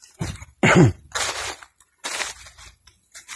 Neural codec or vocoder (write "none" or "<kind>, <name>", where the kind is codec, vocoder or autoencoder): none